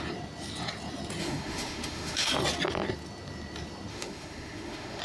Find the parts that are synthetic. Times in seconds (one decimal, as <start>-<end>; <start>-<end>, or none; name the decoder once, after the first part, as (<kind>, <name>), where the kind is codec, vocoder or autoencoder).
1.2-2.3 (autoencoder, DAC-VAE); 3.9-5.0